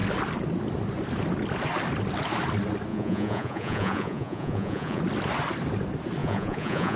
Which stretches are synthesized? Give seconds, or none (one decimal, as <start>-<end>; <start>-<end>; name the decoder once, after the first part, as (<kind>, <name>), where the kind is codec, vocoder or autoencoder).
2.9-5.0 (vocoder, Vocos); 6.2-7.0